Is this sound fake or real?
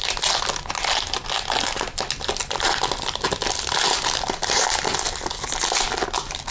real